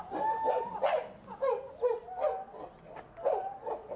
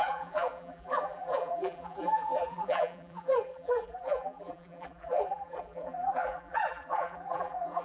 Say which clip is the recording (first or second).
first